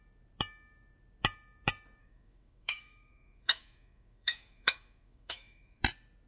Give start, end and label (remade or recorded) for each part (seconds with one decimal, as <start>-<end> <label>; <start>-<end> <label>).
0.0-2.0 recorded; 2.0-5.8 remade; 5.8-6.3 recorded